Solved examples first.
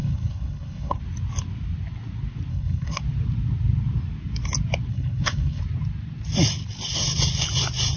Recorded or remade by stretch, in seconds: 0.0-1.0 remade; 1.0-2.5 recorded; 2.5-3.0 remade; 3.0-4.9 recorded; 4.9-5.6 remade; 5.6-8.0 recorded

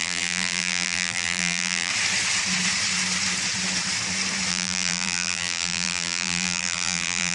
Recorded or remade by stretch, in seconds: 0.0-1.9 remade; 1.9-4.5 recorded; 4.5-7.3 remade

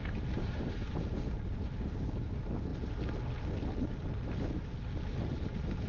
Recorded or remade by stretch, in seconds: 0.0-1.2 remade; 1.2-5.9 recorded

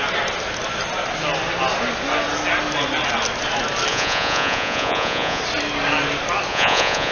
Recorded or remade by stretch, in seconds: 0.0-3.9 recorded; 3.9-5.4 remade; 5.4-6.5 recorded; 6.5-7.1 remade

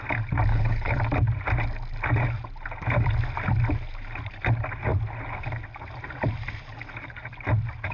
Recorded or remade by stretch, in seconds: 0.0-0.5 recorded; 0.5-1.0 remade; 1.0-7.9 recorded